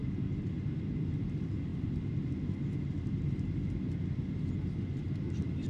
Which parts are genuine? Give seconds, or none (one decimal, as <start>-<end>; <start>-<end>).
0.0-5.7